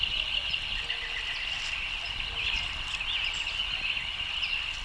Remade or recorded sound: recorded